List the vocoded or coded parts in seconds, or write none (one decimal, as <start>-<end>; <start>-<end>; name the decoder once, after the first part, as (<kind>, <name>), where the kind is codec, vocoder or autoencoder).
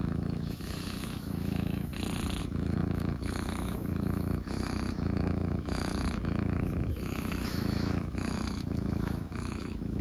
0.0-1.9 (autoencoder, DAC-VAE); 2.4-10.0